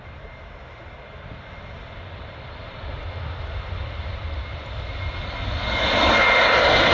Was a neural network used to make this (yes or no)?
no